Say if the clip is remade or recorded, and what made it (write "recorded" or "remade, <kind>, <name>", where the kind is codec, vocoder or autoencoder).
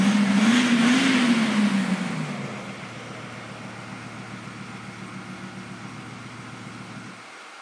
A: recorded